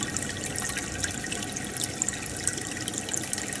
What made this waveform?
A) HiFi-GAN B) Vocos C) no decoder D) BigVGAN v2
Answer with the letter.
C